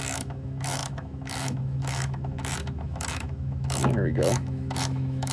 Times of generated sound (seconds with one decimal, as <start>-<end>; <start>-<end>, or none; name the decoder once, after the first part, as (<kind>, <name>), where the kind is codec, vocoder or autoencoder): 0.0-5.3 (autoencoder, DAC-VAE)